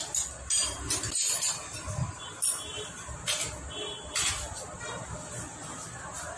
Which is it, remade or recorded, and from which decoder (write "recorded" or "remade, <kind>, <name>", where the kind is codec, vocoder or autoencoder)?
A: recorded